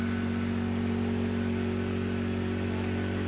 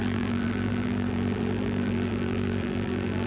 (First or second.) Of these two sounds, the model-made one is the second